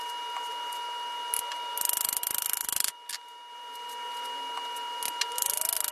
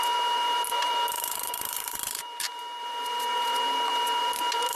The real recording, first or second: first